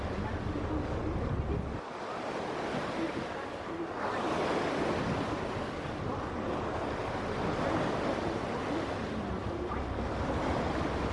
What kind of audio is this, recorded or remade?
recorded